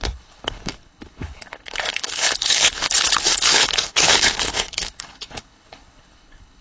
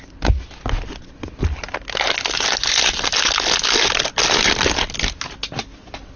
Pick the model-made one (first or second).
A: first